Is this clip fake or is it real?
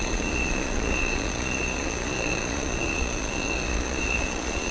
fake